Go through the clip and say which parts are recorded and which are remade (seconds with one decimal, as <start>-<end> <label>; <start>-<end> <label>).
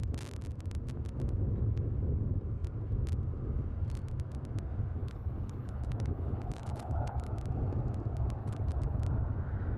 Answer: 0.0-5.0 recorded; 5.0-7.3 remade; 7.3-8.4 recorded; 8.4-9.0 remade; 9.0-9.8 recorded